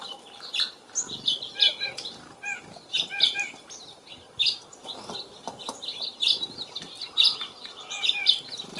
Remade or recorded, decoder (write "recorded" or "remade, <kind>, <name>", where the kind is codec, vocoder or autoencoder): recorded